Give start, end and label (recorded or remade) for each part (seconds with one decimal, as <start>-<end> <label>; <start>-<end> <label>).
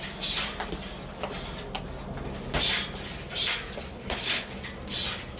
0.0-3.9 recorded; 3.9-4.5 remade; 4.5-5.4 recorded